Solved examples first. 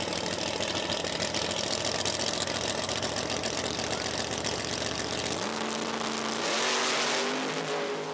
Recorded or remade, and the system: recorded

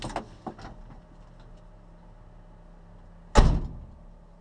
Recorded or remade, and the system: recorded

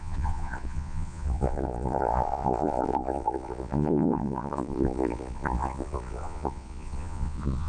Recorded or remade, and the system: remade, vocoder, Vocos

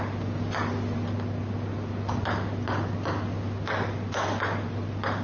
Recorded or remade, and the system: recorded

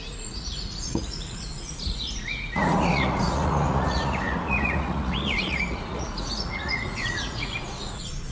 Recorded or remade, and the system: remade, vocoder, Vocos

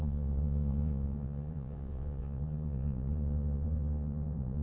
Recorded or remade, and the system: remade, vocoder, Vocos